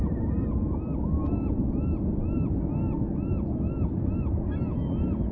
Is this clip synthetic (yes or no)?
no